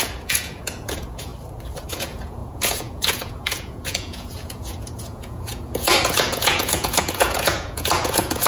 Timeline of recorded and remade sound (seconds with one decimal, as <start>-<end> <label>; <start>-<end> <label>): 0.0-1.3 remade; 1.3-1.9 recorded; 1.9-8.5 remade